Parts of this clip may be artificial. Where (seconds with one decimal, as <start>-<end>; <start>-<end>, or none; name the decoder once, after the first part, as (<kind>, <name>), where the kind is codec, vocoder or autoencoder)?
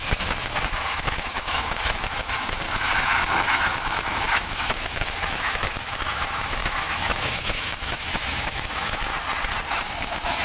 0.0-9.1 (autoencoder, DAC-VAE); 9.7-10.4